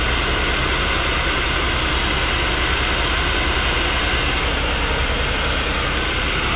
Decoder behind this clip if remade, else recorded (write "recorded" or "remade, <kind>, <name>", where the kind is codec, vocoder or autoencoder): recorded